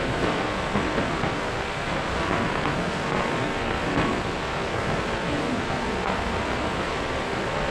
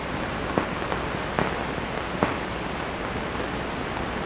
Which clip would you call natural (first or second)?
second